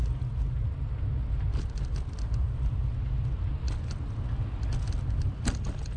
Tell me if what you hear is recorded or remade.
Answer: recorded